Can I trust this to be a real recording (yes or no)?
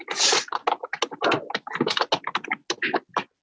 yes